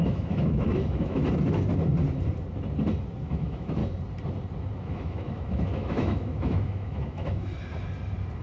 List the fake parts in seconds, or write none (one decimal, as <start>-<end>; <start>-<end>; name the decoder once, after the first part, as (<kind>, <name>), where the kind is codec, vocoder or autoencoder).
0.0-1.2 (autoencoder, DAC-VAE); 3.2-3.8; 4.8-7.5